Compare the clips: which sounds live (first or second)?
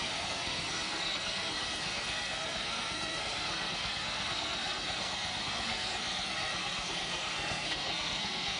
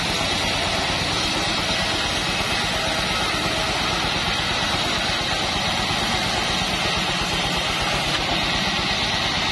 second